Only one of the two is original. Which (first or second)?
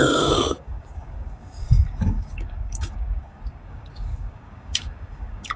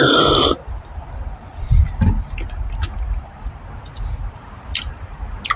second